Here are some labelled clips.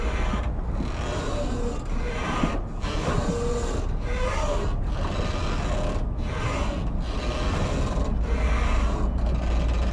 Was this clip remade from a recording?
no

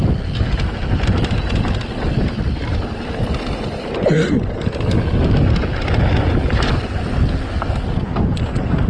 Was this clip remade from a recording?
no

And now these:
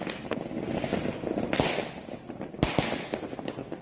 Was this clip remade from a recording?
no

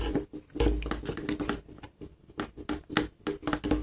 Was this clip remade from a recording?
no